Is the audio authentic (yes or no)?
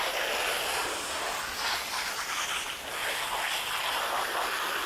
yes